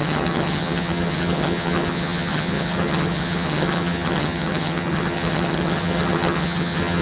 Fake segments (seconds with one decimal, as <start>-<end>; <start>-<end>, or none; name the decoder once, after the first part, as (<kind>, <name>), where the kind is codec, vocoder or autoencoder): 0.0-7.0 (vocoder, HiFi-GAN)

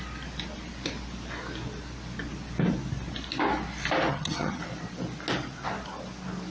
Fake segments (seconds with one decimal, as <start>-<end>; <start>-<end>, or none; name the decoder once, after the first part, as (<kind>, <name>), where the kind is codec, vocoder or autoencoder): 4.1-4.6 (vocoder, HiFi-GAN)

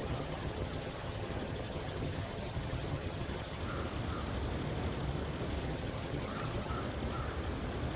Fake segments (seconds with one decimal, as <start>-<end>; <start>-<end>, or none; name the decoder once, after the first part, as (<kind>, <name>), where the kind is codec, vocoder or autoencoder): 0.0-3.6 (vocoder, HiFi-GAN); 5.6-6.7

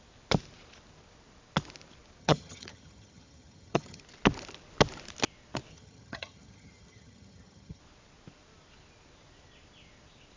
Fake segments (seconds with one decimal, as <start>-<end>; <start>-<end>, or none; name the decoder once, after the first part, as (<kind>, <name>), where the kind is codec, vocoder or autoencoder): 2.2-4.0 (vocoder, HiFi-GAN); 5.7-7.8

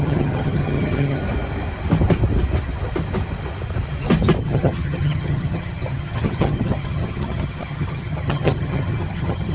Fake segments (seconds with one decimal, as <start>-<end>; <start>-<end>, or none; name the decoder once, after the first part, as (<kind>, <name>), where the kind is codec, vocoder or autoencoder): 0.0-1.2 (vocoder, HiFi-GAN); 4.4-9.5